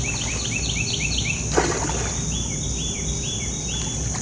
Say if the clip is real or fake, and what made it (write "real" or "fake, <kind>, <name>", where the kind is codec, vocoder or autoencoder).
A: real